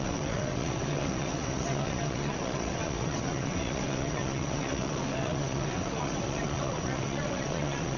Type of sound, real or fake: fake